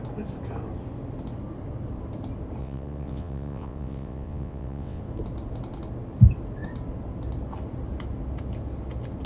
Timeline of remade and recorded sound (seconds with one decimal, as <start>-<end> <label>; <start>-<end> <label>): 0.0-2.6 recorded; 2.6-5.0 remade; 5.0-9.3 recorded